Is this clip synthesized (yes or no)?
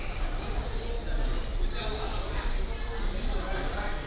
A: no